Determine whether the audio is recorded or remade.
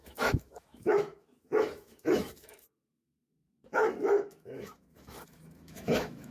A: remade